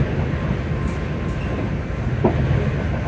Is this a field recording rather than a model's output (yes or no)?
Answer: yes